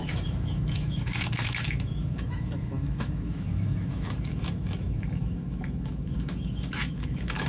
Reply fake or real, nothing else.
fake